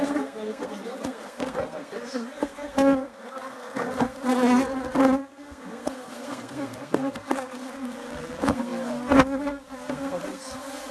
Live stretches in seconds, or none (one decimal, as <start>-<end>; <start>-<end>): none